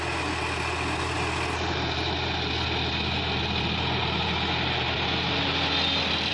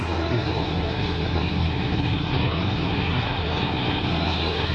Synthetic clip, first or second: second